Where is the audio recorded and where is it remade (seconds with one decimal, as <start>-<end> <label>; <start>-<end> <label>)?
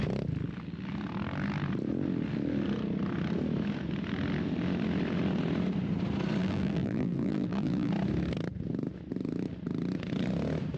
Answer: 0.0-6.4 recorded; 6.4-7.9 remade; 7.9-10.8 recorded